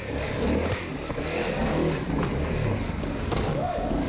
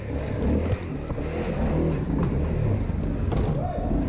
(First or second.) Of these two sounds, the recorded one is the second